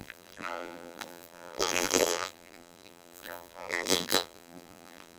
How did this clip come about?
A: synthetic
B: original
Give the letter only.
A